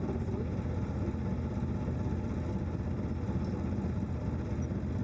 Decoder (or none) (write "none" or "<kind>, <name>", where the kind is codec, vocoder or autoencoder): none